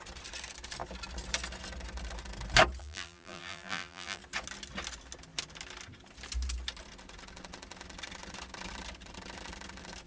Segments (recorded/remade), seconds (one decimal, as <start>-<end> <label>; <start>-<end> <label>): 0.0-2.8 recorded; 2.8-4.2 remade; 4.2-10.1 recorded